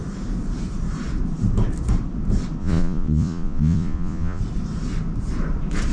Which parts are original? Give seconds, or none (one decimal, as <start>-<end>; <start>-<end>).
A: 0.0-2.6; 4.4-5.9